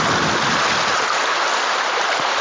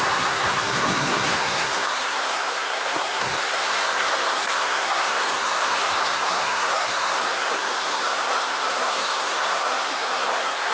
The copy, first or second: second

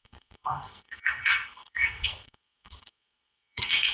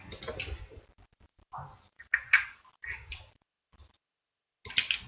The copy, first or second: first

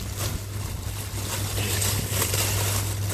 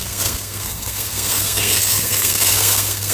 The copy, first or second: second